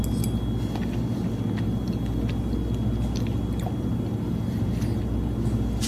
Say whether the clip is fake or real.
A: real